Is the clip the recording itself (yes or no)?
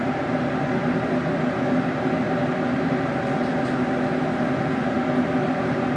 yes